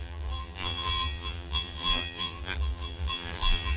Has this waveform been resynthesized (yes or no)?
yes